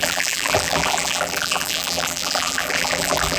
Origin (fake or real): fake